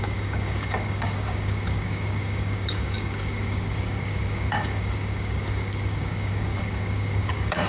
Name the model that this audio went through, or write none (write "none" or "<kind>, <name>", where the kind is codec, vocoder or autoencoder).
codec, DAC